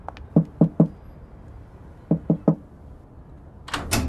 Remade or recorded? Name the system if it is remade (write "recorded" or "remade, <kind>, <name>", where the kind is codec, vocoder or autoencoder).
recorded